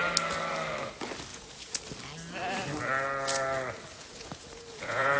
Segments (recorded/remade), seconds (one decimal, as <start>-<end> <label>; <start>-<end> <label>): 0.0-1.3 recorded; 1.3-1.8 remade; 1.8-3.9 recorded; 3.9-5.2 remade